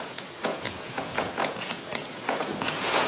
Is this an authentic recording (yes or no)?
no